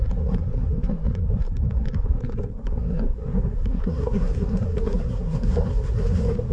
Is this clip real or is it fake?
fake